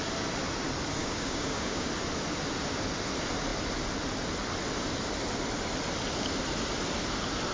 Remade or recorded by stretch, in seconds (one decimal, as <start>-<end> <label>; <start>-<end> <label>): 0.0-1.0 recorded; 1.0-1.9 remade; 1.9-7.5 recorded